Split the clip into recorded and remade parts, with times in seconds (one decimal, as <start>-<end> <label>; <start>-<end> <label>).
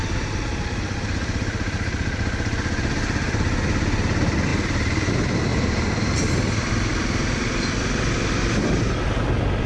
0.0-5.5 recorded; 5.5-6.1 remade; 6.1-9.7 recorded